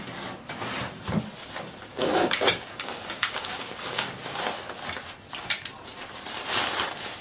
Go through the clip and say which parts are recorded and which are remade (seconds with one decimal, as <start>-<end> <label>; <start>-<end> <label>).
0.0-1.9 recorded; 1.9-4.2 remade; 4.2-7.2 recorded